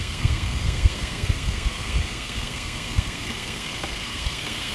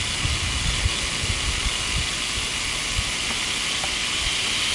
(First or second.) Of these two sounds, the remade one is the first